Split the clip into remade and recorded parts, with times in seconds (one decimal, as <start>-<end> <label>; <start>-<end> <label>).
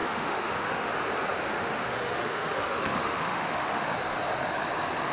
0.0-0.9 remade; 0.9-1.4 recorded; 1.4-3.9 remade; 3.9-5.1 recorded